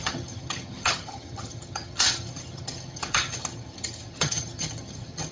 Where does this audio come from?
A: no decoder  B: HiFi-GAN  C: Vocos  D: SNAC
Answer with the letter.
B